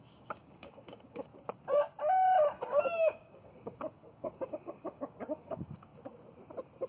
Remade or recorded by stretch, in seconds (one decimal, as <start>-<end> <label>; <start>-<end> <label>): 0.0-1.3 remade; 1.3-2.7 recorded; 2.7-5.9 remade; 5.9-6.9 recorded